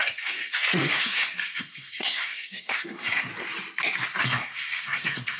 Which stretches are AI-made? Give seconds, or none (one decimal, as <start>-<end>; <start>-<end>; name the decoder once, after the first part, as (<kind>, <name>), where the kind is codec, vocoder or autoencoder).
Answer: 0.0-3.3 (codec, SNAC); 4.2-5.4